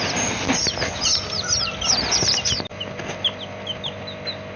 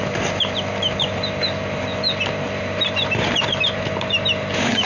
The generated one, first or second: second